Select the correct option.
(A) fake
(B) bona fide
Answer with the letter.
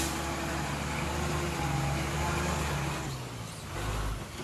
B